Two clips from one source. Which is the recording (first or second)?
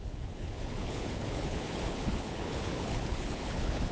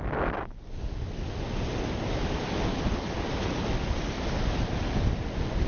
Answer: second